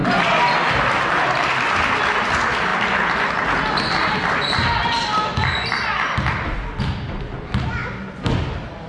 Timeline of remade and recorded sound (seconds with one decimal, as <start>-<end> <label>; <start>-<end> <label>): 0.0-8.9 recorded